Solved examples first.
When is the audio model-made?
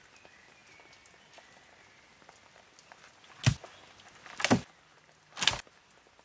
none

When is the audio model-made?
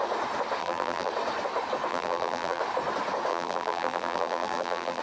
0.6-1.1 (vocoder, BigVGAN v2); 1.9-2.6; 3.3-5.0